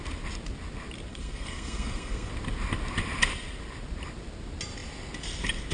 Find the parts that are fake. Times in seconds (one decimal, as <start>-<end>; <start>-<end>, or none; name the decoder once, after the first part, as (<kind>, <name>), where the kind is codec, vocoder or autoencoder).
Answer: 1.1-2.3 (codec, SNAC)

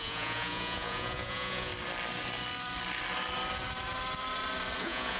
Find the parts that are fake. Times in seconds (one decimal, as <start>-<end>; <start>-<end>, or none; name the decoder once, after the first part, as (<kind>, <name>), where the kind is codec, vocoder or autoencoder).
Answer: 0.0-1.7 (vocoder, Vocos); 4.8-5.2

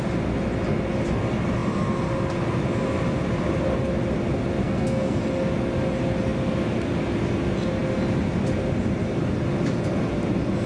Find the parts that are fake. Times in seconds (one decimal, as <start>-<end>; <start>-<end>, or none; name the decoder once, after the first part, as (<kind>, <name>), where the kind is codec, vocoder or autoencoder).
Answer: 4.6-5.2 (codec, SNAC)

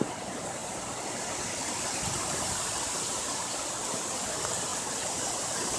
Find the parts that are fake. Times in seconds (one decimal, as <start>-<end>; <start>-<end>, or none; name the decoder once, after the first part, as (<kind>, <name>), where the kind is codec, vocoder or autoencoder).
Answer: none

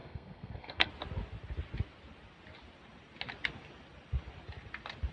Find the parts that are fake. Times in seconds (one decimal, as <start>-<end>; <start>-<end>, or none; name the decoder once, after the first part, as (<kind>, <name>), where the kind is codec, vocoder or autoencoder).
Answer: 0.0-0.9 (codec, SNAC)